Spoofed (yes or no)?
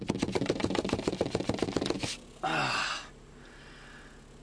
no